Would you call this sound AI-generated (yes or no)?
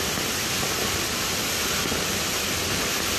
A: no